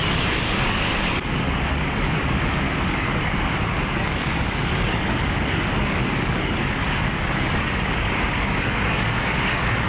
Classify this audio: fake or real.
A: fake